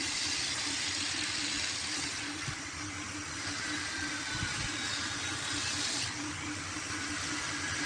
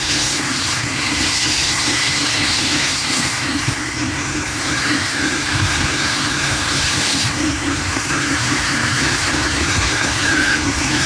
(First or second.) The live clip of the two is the first